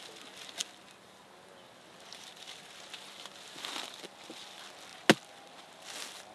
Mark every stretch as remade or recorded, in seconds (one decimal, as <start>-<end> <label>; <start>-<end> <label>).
0.0-6.3 recorded

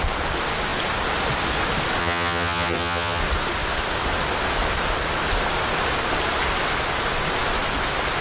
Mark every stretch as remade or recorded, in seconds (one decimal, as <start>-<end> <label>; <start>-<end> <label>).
0.0-2.0 recorded; 2.0-3.2 remade; 3.2-8.2 recorded

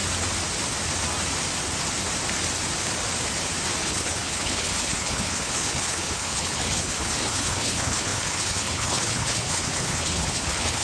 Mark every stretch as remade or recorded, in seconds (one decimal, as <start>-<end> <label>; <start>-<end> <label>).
0.0-3.8 recorded; 3.8-10.8 remade

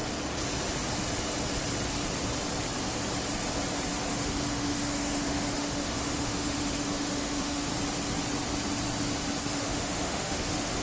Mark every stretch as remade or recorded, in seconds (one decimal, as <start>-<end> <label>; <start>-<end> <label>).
0.0-4.1 recorded; 4.1-7.7 remade; 7.7-9.4 recorded; 9.4-10.8 remade

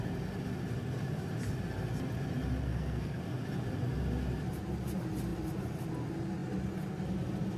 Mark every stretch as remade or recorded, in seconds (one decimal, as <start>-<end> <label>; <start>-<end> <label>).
0.0-2.6 recorded; 2.6-3.2 remade; 3.2-7.6 recorded

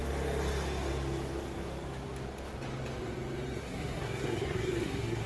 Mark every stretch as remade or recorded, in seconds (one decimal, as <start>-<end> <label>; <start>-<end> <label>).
0.0-3.6 recorded; 3.6-5.3 remade